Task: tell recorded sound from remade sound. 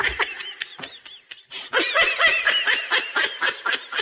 recorded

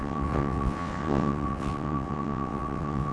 remade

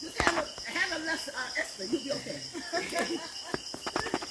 recorded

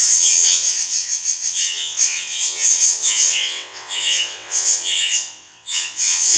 remade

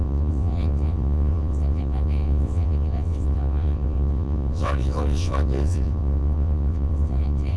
remade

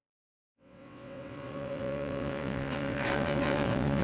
remade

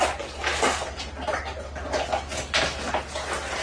recorded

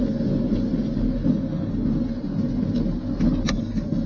recorded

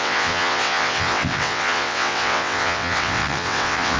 remade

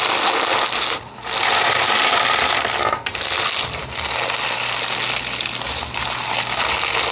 recorded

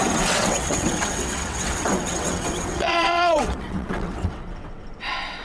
remade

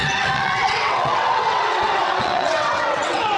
remade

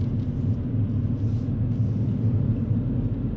recorded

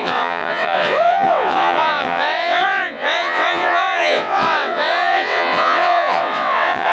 remade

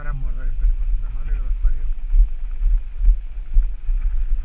recorded